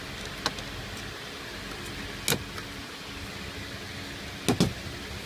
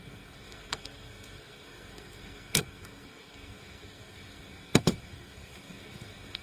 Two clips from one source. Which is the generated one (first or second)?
second